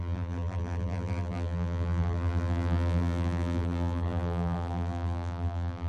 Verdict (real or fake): fake